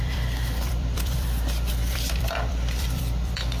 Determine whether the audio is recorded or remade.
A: remade